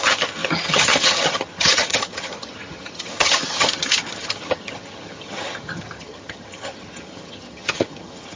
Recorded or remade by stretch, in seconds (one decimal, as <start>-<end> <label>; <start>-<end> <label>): 0.0-8.3 remade